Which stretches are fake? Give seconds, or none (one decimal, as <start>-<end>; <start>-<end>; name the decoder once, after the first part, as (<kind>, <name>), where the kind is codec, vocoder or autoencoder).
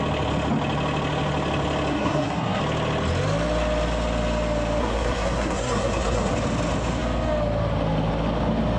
1.9-2.6 (codec, SNAC); 4.8-6.3